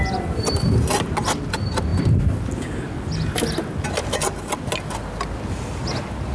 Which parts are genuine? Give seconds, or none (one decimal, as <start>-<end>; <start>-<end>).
0.0-6.3